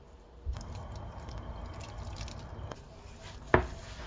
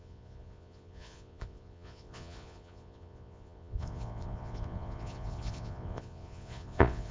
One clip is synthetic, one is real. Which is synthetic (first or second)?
second